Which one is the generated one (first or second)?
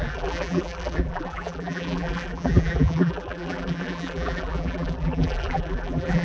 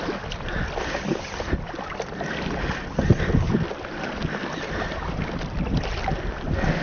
first